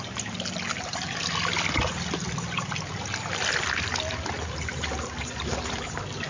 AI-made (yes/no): no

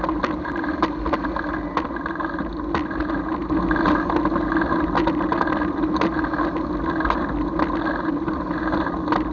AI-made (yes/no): no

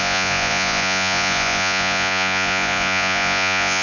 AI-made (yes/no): yes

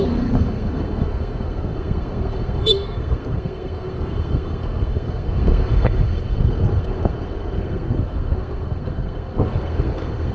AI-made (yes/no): yes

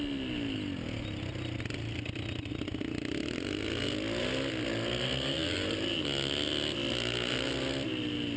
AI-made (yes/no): no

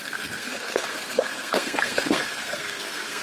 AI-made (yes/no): yes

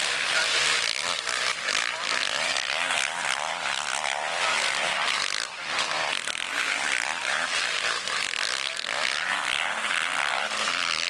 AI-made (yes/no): no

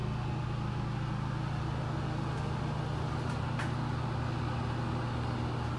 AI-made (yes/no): no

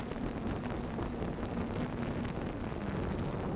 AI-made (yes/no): no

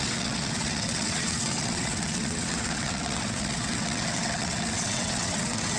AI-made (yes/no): yes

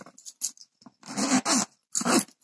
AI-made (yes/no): no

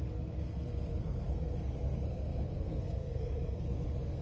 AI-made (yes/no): yes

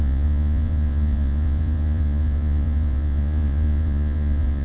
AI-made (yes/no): yes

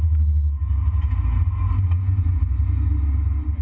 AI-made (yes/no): no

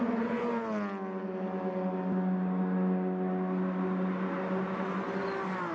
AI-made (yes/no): no